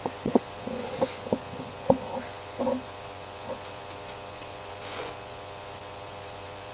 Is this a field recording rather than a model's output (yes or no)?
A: no